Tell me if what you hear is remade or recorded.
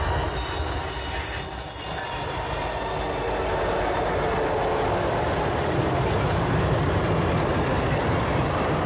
recorded